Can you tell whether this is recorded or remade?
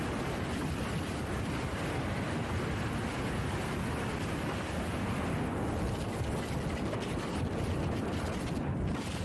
recorded